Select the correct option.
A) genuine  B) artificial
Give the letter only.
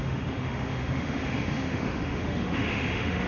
B